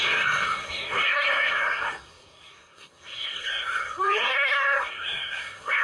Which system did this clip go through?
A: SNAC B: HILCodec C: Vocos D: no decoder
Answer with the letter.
A